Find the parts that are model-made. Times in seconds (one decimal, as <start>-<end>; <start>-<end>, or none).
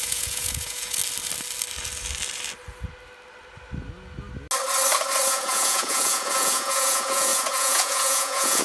0.0-1.0; 5.3-8.6